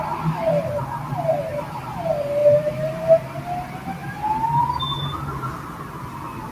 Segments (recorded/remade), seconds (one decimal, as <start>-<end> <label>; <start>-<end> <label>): 0.0-2.4 recorded; 2.4-3.4 remade; 3.4-6.5 recorded